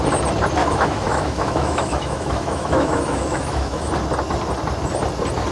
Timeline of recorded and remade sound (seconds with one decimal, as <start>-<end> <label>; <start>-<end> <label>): 0.0-0.6 recorded; 0.6-3.9 remade; 3.9-5.5 recorded